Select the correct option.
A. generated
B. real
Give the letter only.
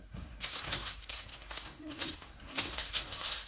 A